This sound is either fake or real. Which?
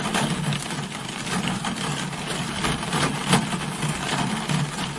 fake